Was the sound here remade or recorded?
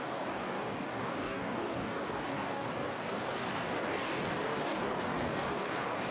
remade